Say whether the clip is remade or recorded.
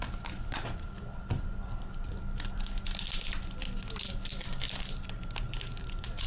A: recorded